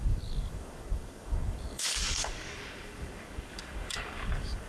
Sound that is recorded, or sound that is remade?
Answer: remade